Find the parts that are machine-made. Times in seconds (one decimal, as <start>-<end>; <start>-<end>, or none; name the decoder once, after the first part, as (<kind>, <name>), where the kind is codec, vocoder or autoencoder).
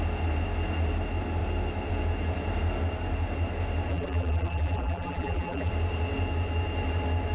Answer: 3.9-5.7 (vocoder, BigVGAN v2)